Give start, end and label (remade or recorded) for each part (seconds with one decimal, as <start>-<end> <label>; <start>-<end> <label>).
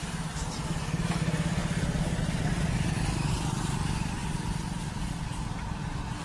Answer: 0.0-6.2 recorded